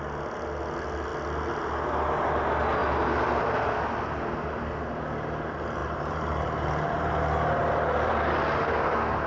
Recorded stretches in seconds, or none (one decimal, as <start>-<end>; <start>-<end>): 0.0-5.8; 8.7-9.3